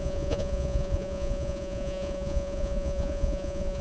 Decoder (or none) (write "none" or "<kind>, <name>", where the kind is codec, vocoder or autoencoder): vocoder, Vocos